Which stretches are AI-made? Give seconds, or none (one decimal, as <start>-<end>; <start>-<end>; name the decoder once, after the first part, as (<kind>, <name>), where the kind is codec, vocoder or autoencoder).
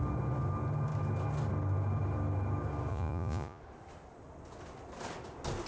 2.9-3.6 (vocoder, Vocos)